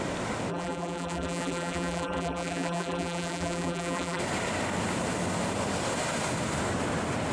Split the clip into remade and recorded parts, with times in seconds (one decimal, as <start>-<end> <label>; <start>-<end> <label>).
0.0-0.5 recorded; 0.5-4.2 remade; 4.2-7.3 recorded